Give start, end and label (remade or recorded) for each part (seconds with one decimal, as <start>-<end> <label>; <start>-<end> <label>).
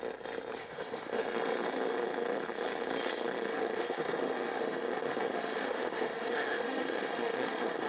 0.0-0.6 recorded; 0.6-1.2 remade; 1.2-3.5 recorded; 3.5-7.9 remade